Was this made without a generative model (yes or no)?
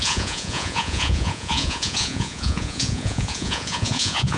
no